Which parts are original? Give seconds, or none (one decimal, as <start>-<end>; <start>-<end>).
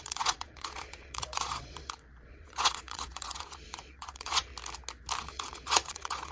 4.5-5.2